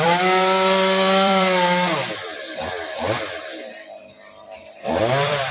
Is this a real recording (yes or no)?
no